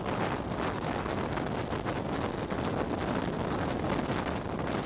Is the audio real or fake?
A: real